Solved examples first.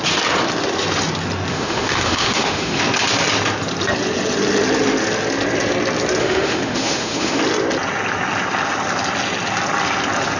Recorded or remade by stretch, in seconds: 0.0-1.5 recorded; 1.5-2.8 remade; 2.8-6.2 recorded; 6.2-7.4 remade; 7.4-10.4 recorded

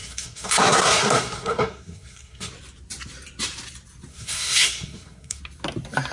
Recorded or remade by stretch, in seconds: 0.0-2.5 remade; 2.5-4.1 recorded; 4.1-5.4 remade; 5.4-6.1 recorded

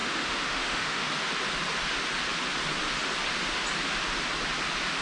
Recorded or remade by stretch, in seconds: 0.0-1.1 remade; 1.1-5.0 recorded